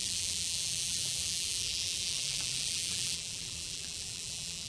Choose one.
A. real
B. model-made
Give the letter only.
B